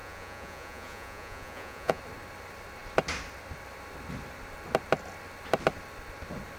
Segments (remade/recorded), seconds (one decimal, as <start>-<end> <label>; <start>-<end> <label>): 0.0-2.0 remade; 2.0-6.6 recorded

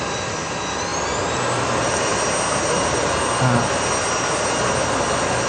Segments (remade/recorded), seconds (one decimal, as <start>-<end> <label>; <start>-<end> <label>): 0.0-5.5 recorded